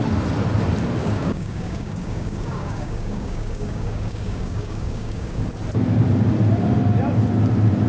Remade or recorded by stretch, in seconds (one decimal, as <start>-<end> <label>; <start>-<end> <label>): 0.0-1.0 recorded; 1.0-5.5 remade; 5.5-7.9 recorded